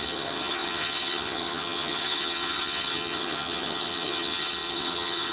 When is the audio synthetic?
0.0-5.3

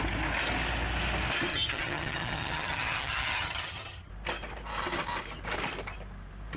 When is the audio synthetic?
1.5-4.1

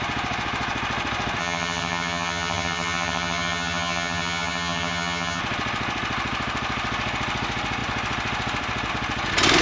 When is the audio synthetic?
1.4-5.4

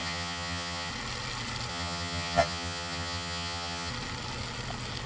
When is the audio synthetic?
0.0-0.9; 1.7-3.9

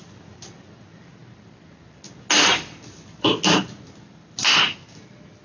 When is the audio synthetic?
none

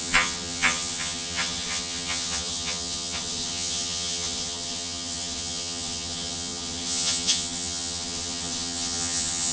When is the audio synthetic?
0.0-9.5

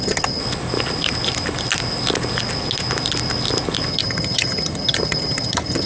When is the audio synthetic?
0.0-0.4; 3.9-5.9

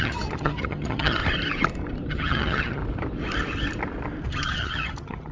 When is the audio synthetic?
0.0-1.2; 2.1-2.8; 4.3-5.3